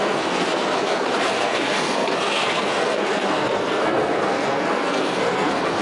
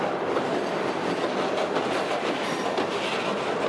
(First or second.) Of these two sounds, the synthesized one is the first